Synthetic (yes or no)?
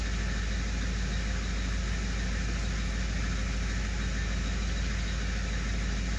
no